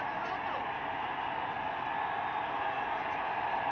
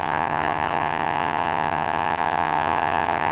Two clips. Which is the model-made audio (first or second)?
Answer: second